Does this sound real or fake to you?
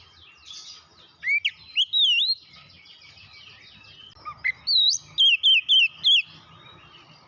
real